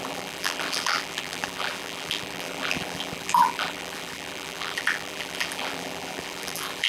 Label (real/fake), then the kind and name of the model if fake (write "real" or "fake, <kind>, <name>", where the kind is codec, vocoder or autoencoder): fake, vocoder, BigVGAN v2